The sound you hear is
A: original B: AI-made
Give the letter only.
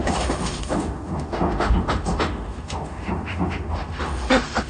B